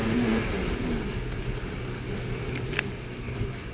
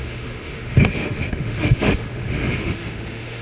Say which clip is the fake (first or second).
second